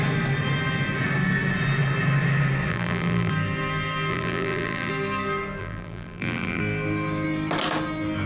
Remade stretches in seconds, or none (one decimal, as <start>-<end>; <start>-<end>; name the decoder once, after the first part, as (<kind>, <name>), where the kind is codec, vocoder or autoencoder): 2.7-3.3 (vocoder, BigVGAN v2); 4.1-4.9; 5.6-6.6